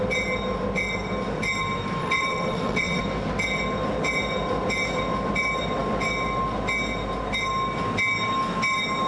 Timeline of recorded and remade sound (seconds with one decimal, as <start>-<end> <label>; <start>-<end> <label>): 0.0-2.0 recorded; 2.0-3.0 remade; 3.0-9.1 recorded